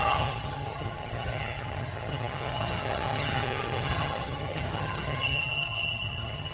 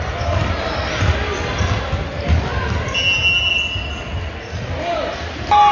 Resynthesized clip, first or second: first